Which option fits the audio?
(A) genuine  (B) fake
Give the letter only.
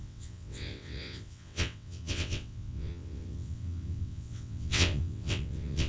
B